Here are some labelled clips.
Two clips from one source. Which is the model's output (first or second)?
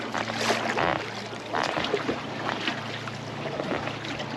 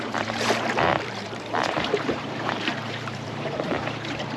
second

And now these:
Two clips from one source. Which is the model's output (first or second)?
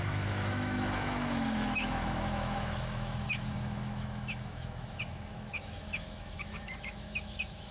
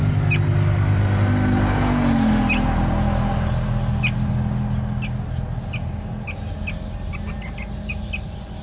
first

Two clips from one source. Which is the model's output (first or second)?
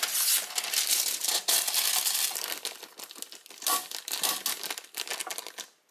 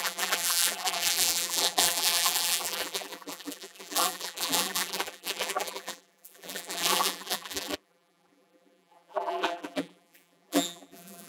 second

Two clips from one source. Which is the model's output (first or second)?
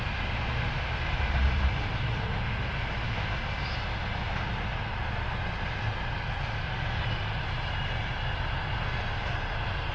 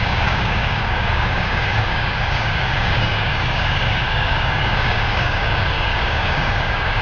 second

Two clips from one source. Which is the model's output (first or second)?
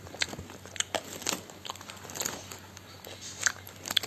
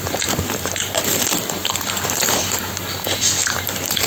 second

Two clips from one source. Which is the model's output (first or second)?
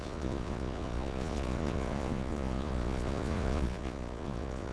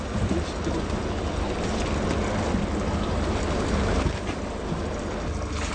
first